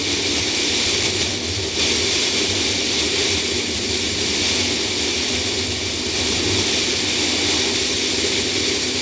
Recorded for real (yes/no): yes